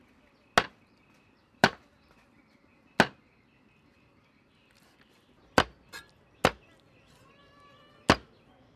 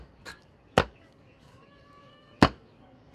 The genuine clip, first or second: first